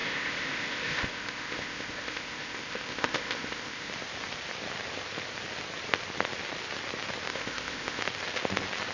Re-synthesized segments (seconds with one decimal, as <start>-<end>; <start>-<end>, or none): 0.0-3.9; 7.3-8.0